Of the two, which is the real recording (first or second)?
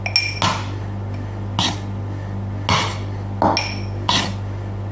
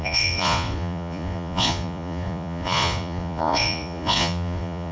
first